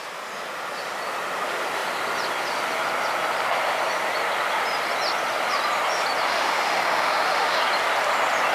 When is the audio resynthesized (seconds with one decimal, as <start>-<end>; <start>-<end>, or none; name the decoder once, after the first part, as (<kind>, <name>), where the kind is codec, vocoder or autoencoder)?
6.3-7.6 (autoencoder, DAC-VAE)